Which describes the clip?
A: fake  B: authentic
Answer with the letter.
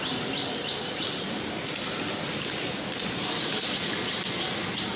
B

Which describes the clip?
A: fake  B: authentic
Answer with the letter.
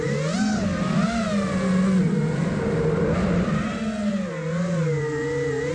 B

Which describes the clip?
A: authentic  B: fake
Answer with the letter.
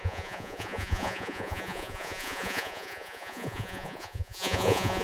B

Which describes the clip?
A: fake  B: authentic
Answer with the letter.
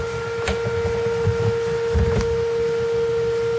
B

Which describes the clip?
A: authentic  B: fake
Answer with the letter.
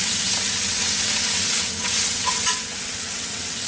B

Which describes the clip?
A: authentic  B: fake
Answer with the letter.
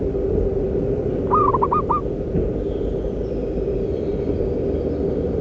A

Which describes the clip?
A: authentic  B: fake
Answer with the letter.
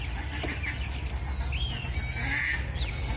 A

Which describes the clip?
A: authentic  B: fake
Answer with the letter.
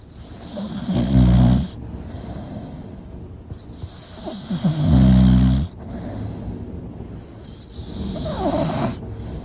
A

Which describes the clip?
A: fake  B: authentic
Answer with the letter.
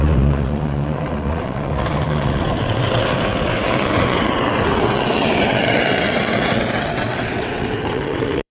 A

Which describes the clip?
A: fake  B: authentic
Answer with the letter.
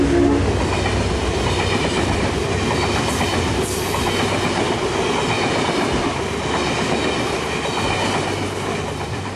B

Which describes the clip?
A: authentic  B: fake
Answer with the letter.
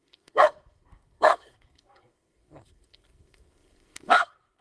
B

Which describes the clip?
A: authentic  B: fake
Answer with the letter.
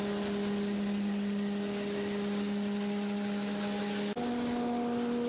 A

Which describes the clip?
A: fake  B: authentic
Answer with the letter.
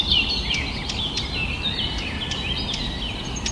B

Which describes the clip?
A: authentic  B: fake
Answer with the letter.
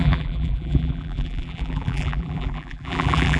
B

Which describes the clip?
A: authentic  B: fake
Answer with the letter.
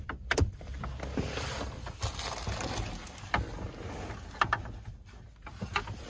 A